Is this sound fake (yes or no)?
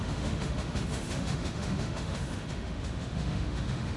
yes